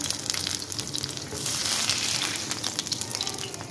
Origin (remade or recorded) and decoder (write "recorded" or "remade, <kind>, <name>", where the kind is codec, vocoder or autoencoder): recorded